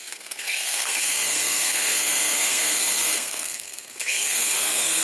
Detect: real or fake fake